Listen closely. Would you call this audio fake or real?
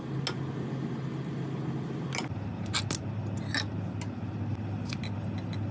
real